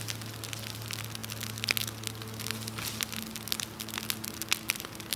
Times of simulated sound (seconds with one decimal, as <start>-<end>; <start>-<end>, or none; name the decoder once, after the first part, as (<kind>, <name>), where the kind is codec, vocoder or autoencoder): none